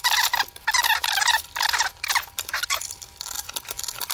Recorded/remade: recorded